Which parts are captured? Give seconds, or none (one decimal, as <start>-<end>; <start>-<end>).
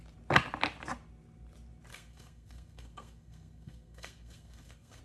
0.0-1.9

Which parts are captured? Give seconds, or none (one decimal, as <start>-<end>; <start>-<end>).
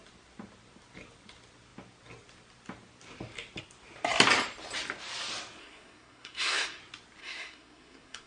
0.0-5.6; 6.8-7.2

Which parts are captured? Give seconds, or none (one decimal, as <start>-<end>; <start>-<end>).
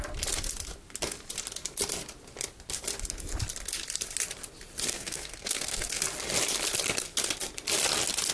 0.0-4.9; 6.0-8.3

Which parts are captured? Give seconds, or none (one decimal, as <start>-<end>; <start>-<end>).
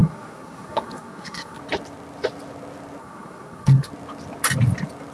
1.6-3.0; 3.9-5.1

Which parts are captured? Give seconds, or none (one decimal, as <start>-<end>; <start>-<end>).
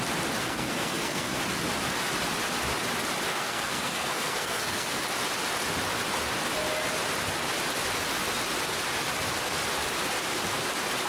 0.0-0.4; 1.4-3.3; 5.0-11.1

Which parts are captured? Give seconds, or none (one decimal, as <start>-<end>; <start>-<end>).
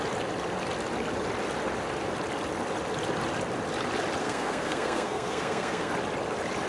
0.0-4.2; 5.9-6.7